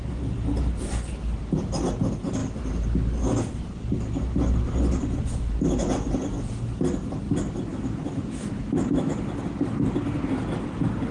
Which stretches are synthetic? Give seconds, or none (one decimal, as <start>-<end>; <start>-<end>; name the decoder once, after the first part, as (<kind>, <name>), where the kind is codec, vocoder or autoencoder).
7.7-9.1 (autoencoder, DAC-VAE)